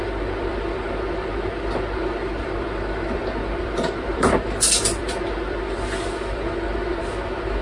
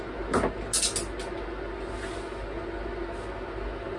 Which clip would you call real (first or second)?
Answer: second